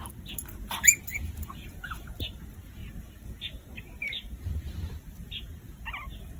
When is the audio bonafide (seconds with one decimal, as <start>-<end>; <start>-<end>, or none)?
0.0-1.1; 2.1-6.4